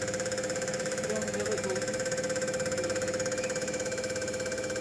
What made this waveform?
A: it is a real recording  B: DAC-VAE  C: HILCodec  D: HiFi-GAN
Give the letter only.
B